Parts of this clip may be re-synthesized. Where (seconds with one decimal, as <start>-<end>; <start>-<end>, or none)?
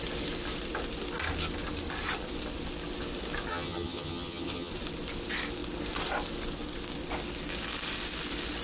3.5-4.7